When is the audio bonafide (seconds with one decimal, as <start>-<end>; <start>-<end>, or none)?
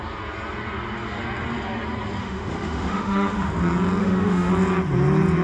0.0-2.2; 3.5-4.0; 4.5-5.4